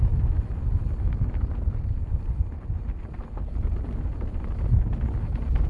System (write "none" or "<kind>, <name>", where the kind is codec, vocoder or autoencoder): none